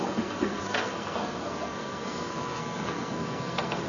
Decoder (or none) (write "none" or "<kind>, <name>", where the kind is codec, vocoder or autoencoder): codec, SNAC